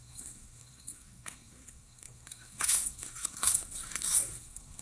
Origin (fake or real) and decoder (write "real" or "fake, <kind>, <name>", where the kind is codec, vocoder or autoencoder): fake, codec, SNAC